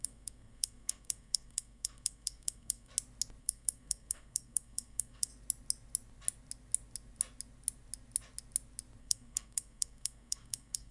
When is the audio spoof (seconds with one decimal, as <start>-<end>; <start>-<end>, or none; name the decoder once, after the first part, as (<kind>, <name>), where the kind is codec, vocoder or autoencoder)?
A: 0.0-2.9 (codec, SNAC); 3.4-5.3; 9.0-10.9